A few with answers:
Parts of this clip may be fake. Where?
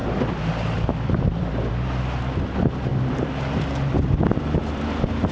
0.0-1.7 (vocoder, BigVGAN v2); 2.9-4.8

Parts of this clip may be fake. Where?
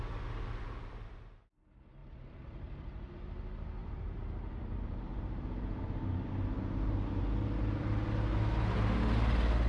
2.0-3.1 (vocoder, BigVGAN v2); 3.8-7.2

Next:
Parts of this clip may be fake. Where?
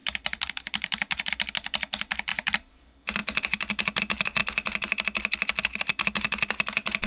0.0-1.3 (vocoder, BigVGAN v2); 2.3-2.8